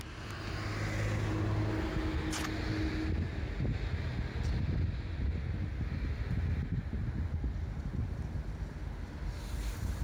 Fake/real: real